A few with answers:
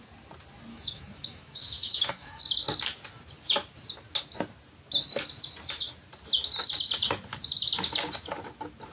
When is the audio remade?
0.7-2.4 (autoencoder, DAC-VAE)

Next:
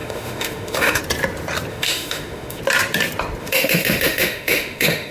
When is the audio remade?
0.0-1.0 (autoencoder, DAC-VAE); 1.7-2.6; 3.4-5.1

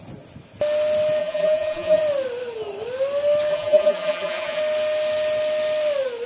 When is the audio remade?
1.2-2.0 (vocoder, BigVGAN v2); 3.5-4.6

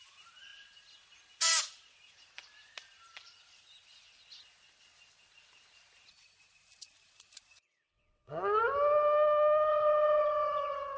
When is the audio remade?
7.5-8.6 (vocoder, WaveNeXt); 9.7-11.0

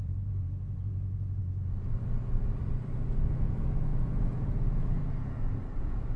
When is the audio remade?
0.0-1.4 (vocoder, Vocos); 3.1-5.0; 5.8-6.2